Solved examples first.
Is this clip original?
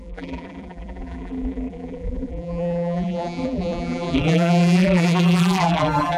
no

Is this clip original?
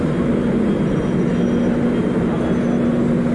yes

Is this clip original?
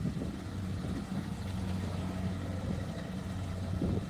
yes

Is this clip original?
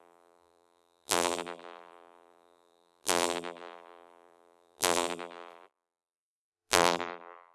no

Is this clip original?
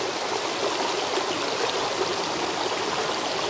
yes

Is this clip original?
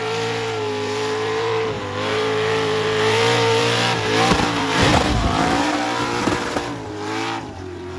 no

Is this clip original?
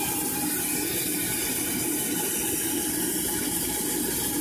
yes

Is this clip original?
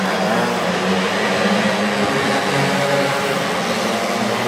yes